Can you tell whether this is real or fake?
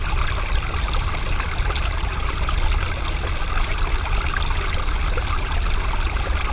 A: real